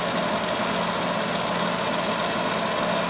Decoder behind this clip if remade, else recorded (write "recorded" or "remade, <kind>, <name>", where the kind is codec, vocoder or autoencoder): recorded